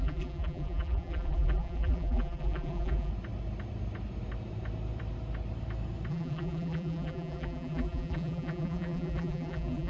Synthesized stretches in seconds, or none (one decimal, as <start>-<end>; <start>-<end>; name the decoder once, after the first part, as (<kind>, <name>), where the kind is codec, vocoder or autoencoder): 0.0-3.1 (vocoder, BigVGAN v2); 6.1-9.9